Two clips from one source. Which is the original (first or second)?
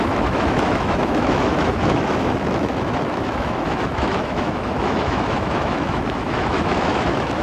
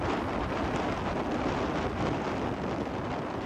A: second